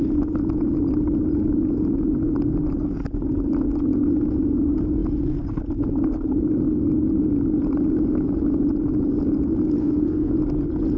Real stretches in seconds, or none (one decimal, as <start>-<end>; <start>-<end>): 0.0-9.8; 10.3-11.0